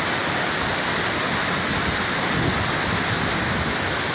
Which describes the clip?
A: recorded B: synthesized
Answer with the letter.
A